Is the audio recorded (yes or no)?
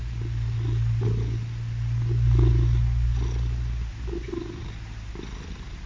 yes